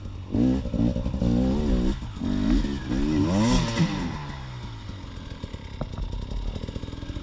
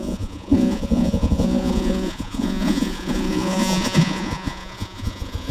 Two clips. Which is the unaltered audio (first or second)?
first